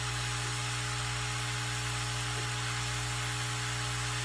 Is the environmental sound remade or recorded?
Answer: recorded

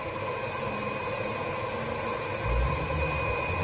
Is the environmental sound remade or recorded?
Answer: recorded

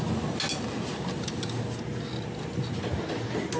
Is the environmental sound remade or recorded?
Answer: recorded